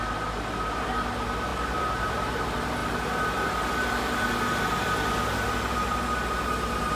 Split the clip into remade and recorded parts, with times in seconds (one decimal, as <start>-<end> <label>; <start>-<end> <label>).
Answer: 0.0-1.5 recorded; 1.5-2.4 remade; 2.4-7.0 recorded

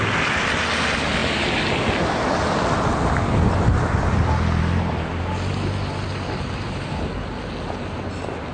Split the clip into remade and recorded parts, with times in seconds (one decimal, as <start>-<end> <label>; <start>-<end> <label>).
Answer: 0.0-8.5 recorded

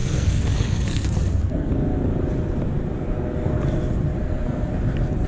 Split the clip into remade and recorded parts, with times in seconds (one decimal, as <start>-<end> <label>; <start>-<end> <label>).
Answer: 0.0-1.7 remade; 1.7-4.2 recorded; 4.2-4.7 remade; 4.7-5.3 recorded

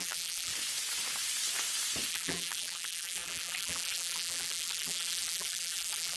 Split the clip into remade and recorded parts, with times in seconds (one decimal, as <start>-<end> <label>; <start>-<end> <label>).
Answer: 0.0-0.5 remade; 0.5-2.1 recorded; 2.1-6.2 remade

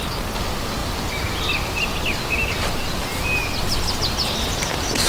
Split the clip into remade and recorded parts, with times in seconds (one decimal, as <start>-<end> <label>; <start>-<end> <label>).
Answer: 0.0-5.1 recorded